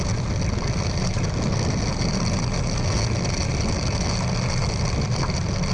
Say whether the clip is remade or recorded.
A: recorded